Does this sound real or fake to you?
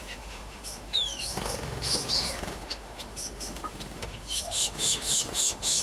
fake